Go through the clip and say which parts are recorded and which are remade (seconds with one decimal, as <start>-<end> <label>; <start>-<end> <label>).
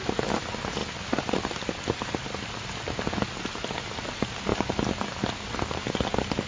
0.0-6.5 recorded